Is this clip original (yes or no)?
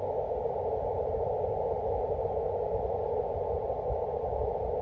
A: yes